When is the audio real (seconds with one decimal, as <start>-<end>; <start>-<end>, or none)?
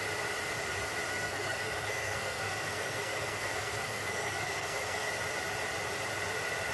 0.0-1.1; 5.1-6.7